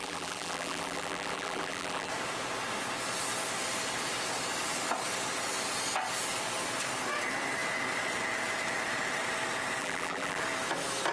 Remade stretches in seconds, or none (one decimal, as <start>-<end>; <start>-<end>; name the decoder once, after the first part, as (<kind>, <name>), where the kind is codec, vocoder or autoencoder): 0.0-2.1 (vocoder, BigVGAN v2); 9.8-10.4